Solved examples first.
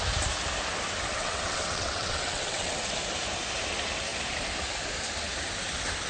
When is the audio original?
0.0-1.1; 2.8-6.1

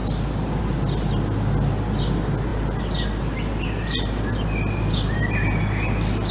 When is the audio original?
0.0-6.3

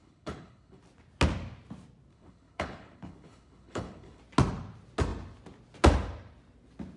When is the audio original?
0.8-2.1; 4.2-7.0

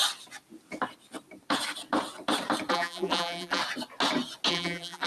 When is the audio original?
0.0-2.7; 3.6-4.5

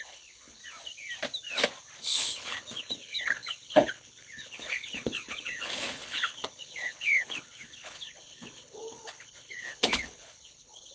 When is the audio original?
0.6-2.0

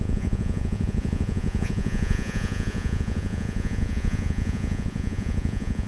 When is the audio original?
none

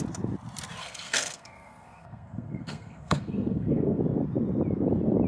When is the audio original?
0.0-0.8; 4.0-5.3